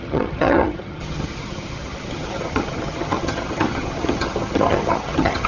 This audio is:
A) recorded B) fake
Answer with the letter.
B